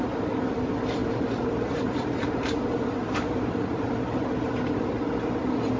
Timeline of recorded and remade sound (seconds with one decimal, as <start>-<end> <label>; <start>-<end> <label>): 0.0-1.0 recorded; 1.0-4.5 remade; 4.5-5.8 recorded